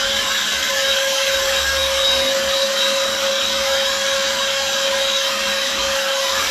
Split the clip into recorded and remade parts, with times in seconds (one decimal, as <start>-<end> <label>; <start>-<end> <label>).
0.0-6.5 remade